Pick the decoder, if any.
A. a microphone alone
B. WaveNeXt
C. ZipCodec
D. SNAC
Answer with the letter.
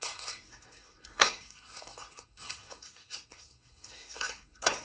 D